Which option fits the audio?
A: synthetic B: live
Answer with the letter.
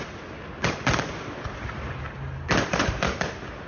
B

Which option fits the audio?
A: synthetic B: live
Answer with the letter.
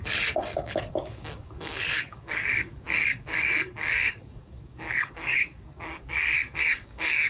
A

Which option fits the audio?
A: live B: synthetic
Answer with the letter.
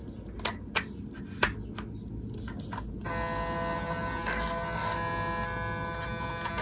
A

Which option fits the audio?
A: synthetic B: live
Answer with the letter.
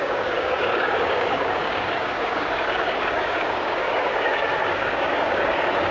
A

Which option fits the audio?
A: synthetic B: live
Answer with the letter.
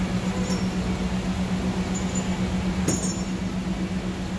B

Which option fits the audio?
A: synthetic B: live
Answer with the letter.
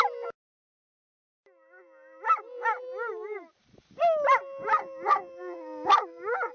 B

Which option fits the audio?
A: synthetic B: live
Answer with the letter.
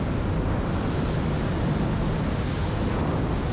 B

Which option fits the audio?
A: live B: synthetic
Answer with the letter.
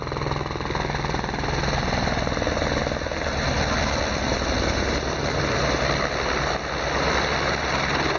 A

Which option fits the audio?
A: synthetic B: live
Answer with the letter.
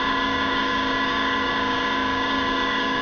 A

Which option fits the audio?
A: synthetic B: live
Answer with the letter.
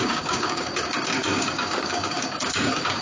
A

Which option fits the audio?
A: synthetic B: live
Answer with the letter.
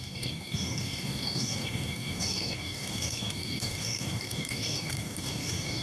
A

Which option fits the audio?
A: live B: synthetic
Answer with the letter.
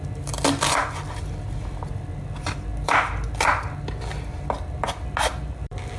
A